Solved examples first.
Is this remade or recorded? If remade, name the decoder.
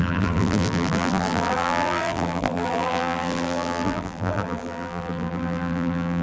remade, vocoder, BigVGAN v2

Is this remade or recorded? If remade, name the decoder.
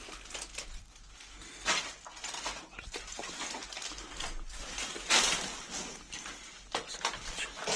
recorded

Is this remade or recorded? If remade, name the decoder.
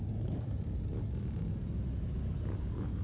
remade, vocoder, BigVGAN v2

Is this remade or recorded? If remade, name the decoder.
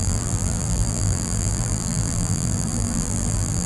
remade, vocoder, BigVGAN v2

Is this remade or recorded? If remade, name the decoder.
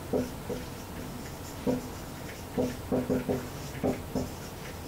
recorded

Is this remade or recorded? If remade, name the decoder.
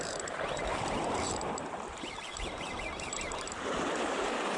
remade, vocoder, BigVGAN v2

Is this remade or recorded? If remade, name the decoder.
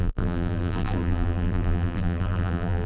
remade, vocoder, BigVGAN v2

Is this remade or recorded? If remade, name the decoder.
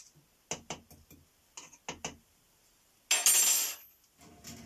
recorded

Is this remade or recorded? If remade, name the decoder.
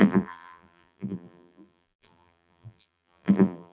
remade, vocoder, BigVGAN v2